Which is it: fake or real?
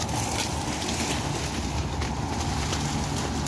real